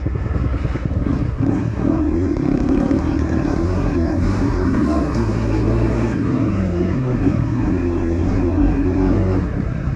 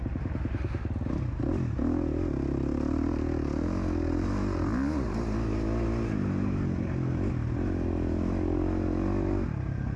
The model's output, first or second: first